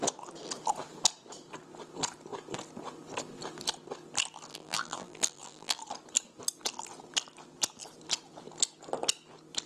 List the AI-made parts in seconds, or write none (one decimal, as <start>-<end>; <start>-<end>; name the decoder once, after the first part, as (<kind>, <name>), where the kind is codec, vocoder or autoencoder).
4.5-5.8 (vocoder, BigVGAN v2)